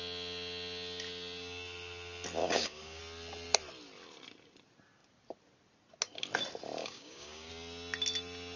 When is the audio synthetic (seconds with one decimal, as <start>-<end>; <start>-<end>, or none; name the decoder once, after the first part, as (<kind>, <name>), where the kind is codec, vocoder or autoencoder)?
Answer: 2.4-3.0 (codec, DAC); 6.8-7.5